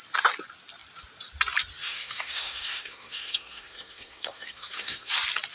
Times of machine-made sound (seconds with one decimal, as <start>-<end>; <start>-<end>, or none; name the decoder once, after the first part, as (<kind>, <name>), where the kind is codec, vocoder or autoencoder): 1.8-5.1 (codec, SNAC)